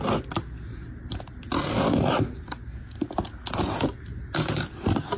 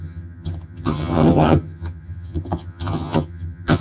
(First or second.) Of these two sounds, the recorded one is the first